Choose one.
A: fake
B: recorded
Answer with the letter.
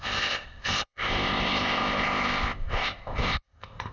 A